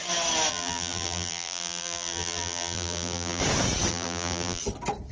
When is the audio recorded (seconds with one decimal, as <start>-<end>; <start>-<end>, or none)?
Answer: 0.0-0.5; 3.4-3.9; 4.6-5.1